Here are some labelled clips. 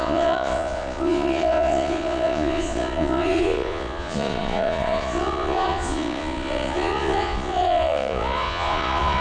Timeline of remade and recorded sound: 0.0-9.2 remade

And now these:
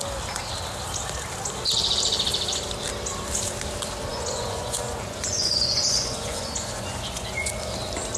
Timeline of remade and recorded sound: 0.0-4.1 recorded; 4.1-7.5 remade; 7.5-8.2 recorded

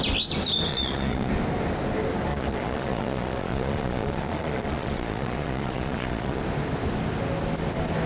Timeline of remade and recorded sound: 0.0-0.7 recorded; 0.7-1.3 remade; 1.3-2.3 recorded; 2.3-6.4 remade; 6.4-8.1 recorded